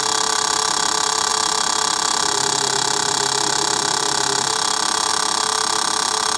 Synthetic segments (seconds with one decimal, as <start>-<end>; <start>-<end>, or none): none